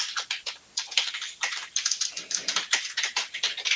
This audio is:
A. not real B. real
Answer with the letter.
B